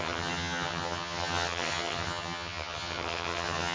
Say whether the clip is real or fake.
fake